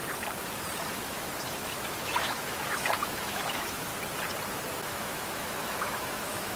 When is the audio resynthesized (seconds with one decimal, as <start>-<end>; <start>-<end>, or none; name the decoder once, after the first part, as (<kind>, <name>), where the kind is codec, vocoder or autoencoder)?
0.9-3.9 (autoencoder, DAC-VAE); 4.9-6.6